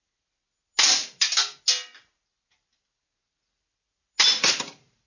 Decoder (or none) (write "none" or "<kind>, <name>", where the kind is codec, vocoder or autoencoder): none